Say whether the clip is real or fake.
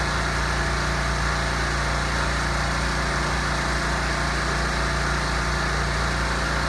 real